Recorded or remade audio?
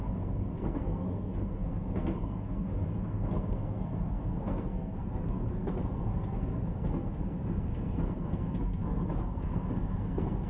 remade